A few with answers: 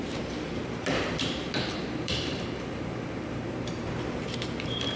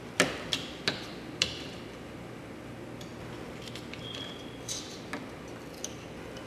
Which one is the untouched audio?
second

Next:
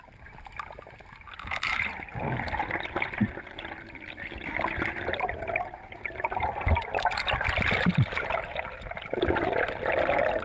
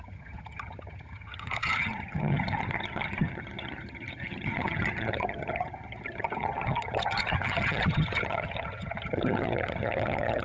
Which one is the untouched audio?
first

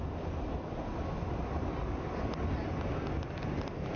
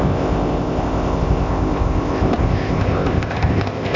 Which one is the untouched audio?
first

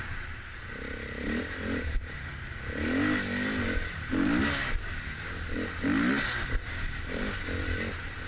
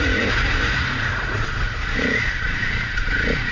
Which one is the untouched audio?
first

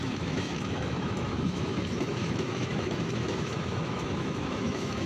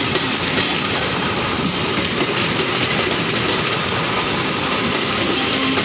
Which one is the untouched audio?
second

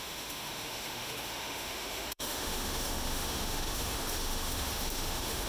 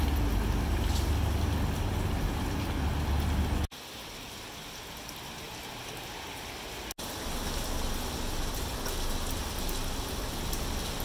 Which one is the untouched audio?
second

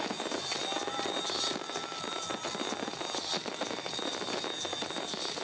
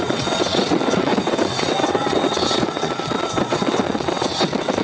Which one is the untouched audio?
first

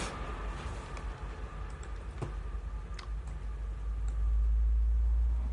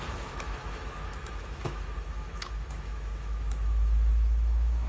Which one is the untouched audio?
first